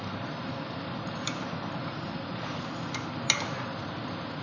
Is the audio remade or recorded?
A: recorded